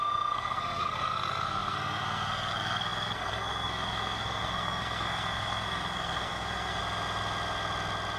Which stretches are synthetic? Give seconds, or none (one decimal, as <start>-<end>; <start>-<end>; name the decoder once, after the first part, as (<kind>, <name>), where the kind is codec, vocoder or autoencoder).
0.0-6.8 (codec, SNAC)